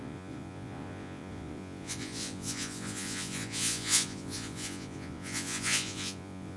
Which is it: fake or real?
fake